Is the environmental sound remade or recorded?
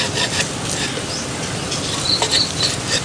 recorded